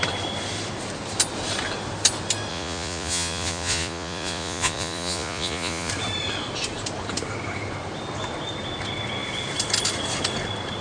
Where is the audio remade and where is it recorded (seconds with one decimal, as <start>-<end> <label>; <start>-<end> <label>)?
0.0-2.5 recorded; 2.5-5.9 remade; 5.9-10.8 recorded